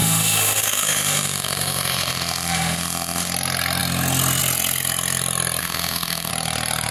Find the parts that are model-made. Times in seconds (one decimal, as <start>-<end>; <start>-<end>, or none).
0.0-3.3; 5.6-6.3